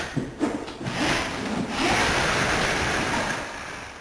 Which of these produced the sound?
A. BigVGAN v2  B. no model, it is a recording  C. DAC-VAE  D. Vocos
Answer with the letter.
B